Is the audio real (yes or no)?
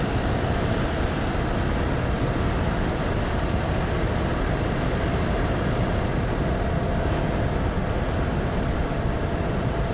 yes